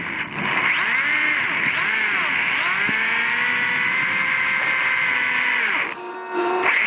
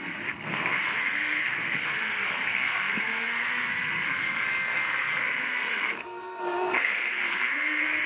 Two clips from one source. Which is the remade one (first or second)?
second